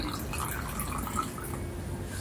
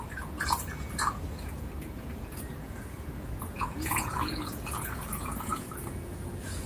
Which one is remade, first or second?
second